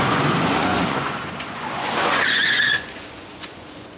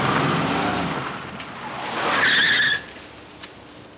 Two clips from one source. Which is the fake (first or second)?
first